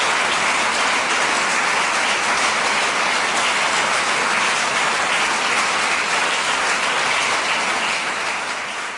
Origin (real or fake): real